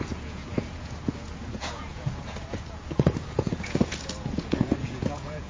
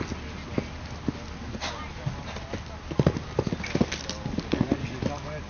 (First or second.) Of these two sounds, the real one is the second